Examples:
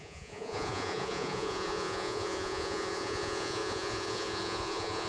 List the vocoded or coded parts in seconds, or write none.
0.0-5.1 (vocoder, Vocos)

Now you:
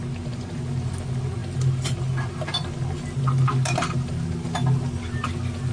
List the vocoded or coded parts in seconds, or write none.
none